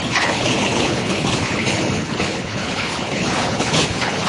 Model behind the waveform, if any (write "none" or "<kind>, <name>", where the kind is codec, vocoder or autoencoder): codec, HILCodec